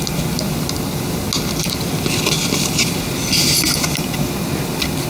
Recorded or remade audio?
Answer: recorded